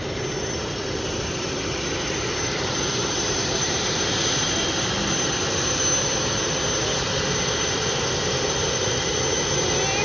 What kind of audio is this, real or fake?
real